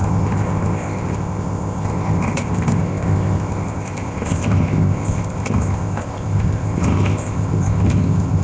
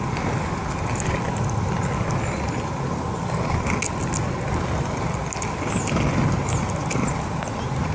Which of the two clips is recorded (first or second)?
second